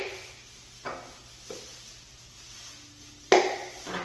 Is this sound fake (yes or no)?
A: no